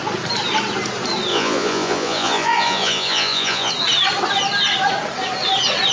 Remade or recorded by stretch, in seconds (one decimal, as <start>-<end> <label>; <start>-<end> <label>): 0.0-1.3 recorded; 1.3-3.7 remade; 3.7-5.9 recorded